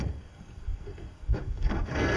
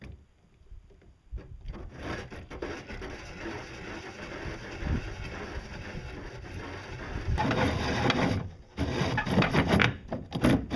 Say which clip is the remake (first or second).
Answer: first